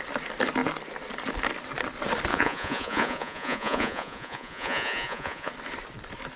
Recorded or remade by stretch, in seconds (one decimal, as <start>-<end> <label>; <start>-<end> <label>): 0.0-2.3 recorded; 2.3-5.5 remade; 5.5-6.4 recorded